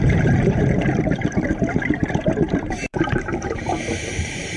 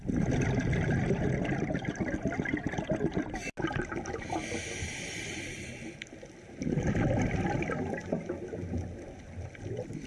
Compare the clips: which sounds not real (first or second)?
first